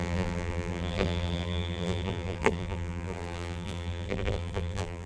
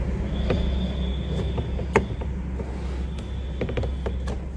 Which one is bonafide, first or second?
second